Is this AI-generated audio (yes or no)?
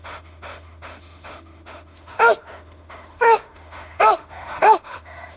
yes